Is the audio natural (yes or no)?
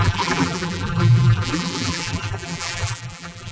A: no